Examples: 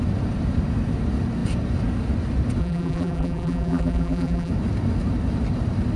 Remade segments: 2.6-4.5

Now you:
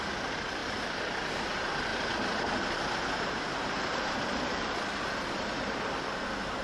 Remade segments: 0.6-1.5; 1.9-5.9

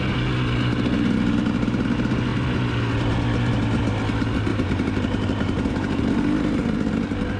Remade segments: 4.5-6.6

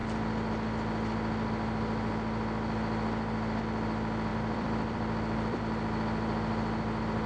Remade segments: 4.3-5.6

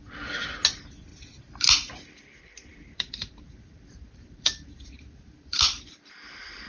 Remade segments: 1.1-2.2; 2.7-6.1

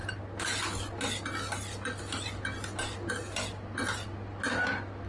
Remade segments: none